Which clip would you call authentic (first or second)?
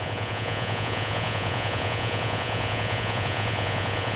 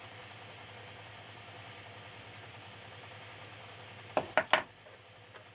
second